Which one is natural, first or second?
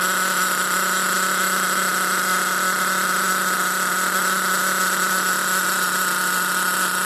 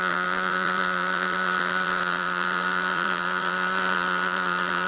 first